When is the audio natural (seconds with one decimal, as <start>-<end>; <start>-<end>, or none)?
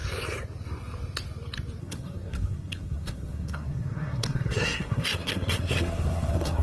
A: 0.0-1.8